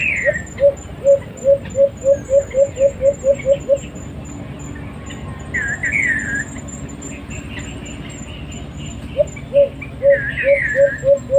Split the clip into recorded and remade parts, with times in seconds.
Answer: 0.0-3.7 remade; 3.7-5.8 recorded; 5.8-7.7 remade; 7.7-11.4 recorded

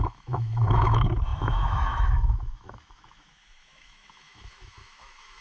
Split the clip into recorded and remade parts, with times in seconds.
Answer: 0.0-5.4 remade